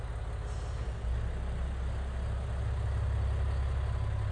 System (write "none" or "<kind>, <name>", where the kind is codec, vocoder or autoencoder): none